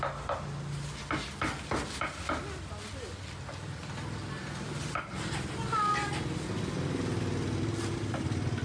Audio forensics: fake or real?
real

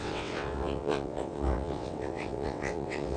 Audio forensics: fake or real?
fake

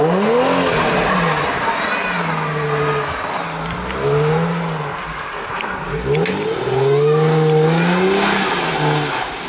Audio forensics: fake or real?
real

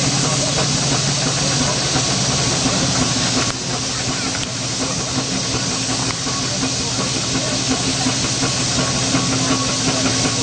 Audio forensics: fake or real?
real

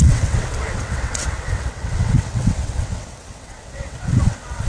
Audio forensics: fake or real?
fake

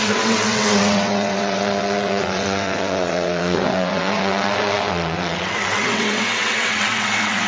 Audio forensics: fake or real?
fake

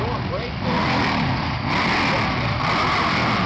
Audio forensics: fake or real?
real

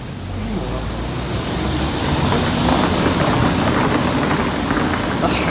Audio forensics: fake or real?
real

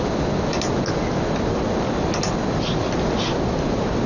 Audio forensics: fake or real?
real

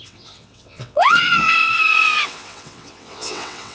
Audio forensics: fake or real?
fake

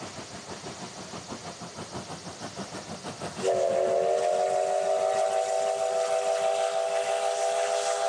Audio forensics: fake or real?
real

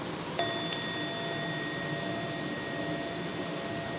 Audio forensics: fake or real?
real